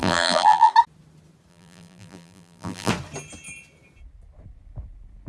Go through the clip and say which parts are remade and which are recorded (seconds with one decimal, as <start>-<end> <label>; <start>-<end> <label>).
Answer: 0.0-0.7 remade; 0.7-1.5 recorded; 1.5-2.9 remade; 2.9-5.3 recorded